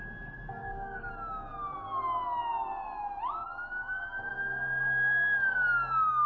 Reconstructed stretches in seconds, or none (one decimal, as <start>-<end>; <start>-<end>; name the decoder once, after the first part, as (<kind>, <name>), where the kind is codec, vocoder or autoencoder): 0.6-1.1 (codec, DAC); 3.4-4.3